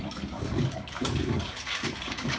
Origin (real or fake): fake